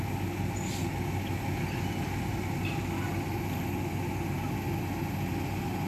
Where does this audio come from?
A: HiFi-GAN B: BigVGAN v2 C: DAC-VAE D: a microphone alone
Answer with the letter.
D